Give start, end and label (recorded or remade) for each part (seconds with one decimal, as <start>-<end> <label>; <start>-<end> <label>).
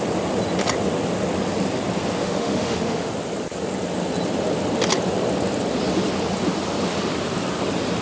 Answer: 0.0-2.2 recorded; 2.2-3.1 remade; 3.1-8.0 recorded